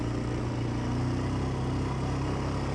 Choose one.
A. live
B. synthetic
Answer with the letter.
A